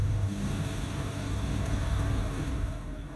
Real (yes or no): no